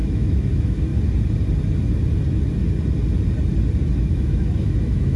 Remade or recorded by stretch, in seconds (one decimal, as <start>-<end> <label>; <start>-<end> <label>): 0.0-0.9 remade; 0.9-4.0 recorded; 4.0-5.2 remade